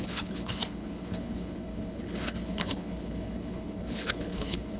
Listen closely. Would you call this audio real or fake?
fake